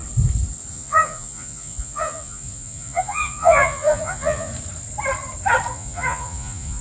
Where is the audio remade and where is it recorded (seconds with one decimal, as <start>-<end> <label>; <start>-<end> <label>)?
0.0-0.7 recorded; 0.7-4.5 remade; 4.5-5.7 recorded; 5.7-6.8 remade